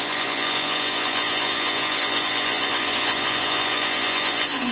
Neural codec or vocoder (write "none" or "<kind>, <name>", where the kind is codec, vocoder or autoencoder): vocoder, Vocos